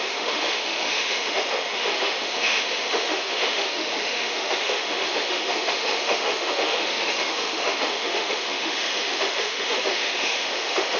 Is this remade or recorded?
remade